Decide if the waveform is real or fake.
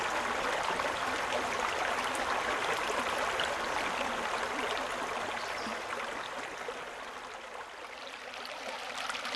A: real